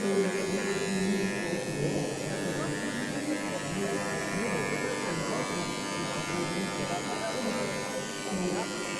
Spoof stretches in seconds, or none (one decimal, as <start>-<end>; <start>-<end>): none